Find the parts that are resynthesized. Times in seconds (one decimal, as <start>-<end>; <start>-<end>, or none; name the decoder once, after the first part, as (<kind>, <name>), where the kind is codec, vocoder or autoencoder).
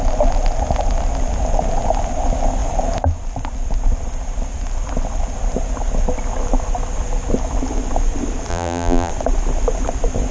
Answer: 8.5-9.1 (vocoder, BigVGAN v2)